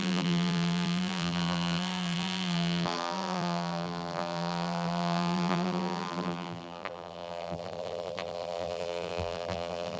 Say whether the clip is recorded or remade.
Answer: remade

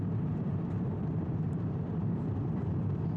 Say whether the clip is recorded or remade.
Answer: remade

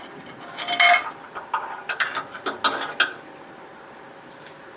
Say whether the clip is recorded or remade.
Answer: recorded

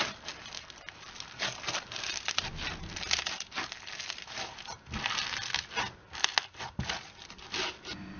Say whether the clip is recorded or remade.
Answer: recorded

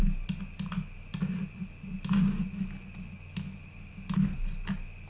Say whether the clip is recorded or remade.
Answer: recorded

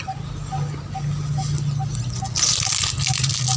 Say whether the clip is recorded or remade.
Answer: recorded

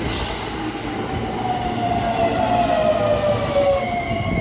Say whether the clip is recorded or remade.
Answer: recorded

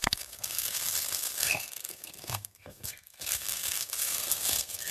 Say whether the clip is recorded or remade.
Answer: remade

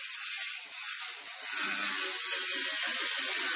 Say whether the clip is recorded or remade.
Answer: recorded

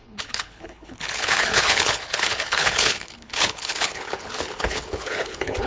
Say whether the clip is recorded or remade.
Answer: remade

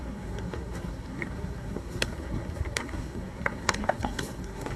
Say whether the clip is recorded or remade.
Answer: remade